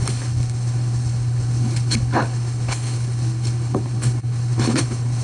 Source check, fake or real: fake